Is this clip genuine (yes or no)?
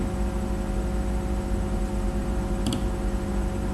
yes